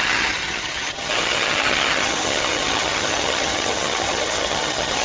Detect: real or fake fake